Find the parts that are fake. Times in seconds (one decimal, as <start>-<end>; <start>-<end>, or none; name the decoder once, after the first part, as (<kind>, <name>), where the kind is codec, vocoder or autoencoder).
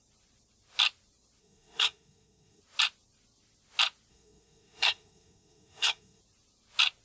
1.4-2.6 (codec, SNAC); 4.1-6.2